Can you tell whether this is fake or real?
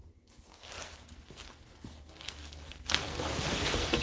fake